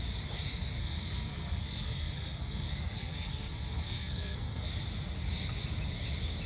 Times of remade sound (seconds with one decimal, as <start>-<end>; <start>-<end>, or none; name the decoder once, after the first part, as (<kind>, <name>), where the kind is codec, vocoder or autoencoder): 0.8-4.7 (codec, SNAC)